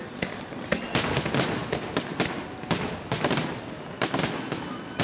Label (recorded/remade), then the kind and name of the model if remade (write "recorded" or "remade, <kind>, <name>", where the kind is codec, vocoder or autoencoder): recorded